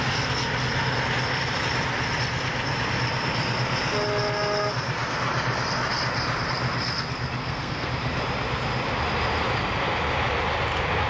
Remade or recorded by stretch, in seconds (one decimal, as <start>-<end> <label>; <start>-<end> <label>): 0.0-7.4 recorded; 7.4-7.9 remade; 7.9-11.1 recorded